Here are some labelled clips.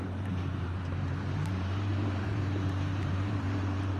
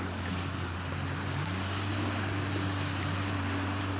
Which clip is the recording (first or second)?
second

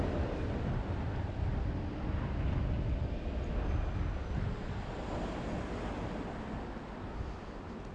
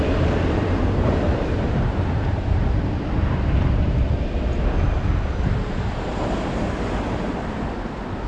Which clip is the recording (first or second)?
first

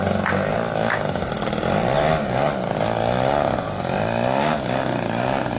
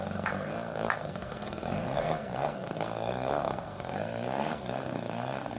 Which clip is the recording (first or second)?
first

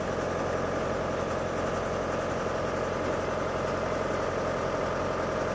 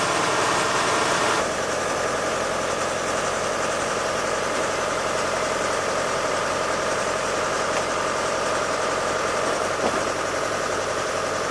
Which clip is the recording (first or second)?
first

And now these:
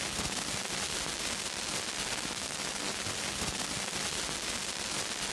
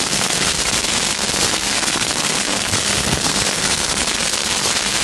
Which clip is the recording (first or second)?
first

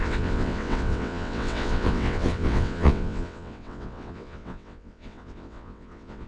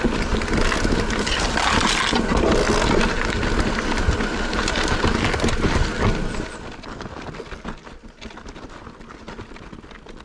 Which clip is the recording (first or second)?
second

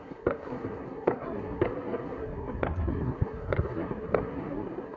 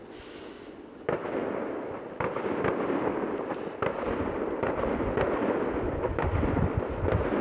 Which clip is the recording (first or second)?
second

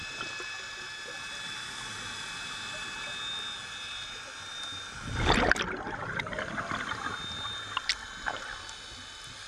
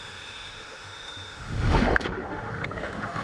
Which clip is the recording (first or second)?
first